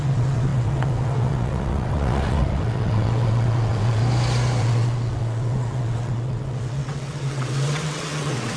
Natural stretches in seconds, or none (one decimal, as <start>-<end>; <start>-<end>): 4.0-4.6

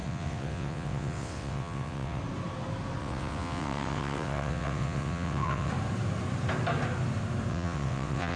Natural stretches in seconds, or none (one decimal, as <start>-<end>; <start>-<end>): 2.2-3.0; 5.7-7.5

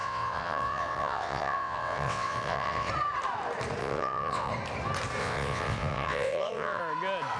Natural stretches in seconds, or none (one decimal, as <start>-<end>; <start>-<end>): 2.9-3.8; 4.5-5.2; 6.8-7.4

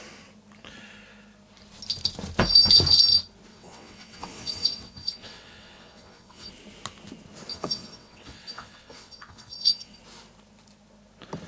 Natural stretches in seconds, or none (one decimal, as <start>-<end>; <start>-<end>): 0.0-3.5; 6.5-7.5; 10.0-11.5

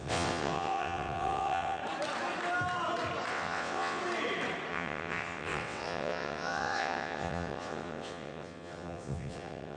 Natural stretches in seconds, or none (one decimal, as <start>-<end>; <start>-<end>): 1.8-3.3; 4.0-4.7

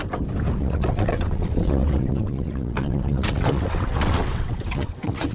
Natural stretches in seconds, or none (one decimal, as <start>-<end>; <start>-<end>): 0.0-0.6